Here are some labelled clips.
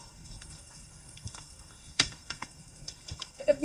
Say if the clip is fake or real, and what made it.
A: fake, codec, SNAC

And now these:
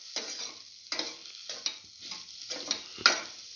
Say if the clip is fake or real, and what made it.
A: real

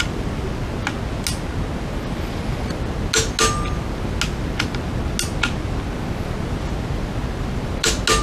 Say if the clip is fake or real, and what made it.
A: real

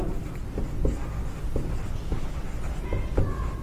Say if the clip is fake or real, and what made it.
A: real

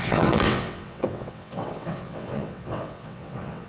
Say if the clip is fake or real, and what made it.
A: fake, vocoder, WaveNeXt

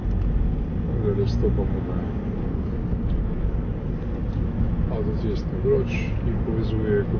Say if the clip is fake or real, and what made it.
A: real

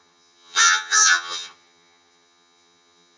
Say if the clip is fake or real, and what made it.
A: fake, vocoder, HiFi-GAN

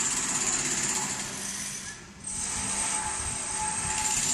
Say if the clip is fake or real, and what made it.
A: fake, vocoder, BigVGAN v2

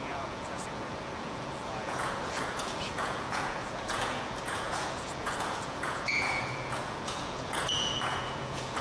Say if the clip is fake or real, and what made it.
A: fake, vocoder, Vocos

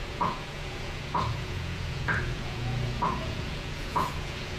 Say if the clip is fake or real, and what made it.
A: fake, vocoder, Vocos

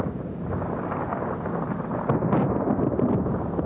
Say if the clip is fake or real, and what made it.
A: real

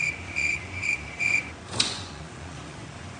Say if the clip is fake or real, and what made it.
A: fake, vocoder, Vocos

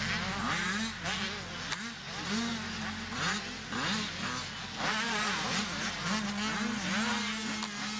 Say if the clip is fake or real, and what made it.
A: real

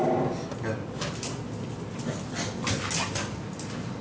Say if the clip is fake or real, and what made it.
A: real